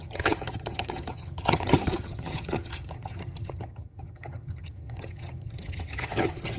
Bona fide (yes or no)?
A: no